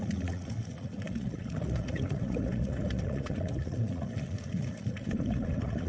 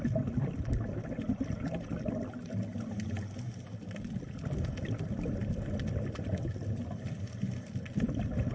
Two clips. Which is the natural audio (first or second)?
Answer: second